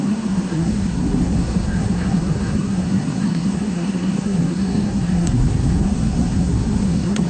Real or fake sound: fake